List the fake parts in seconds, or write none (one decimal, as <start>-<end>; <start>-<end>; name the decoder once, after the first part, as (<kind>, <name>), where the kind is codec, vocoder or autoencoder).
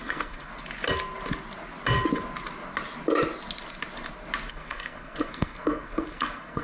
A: 0.0-0.5 (codec, SNAC); 4.5-6.6